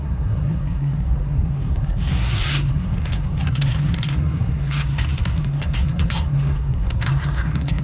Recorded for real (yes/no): no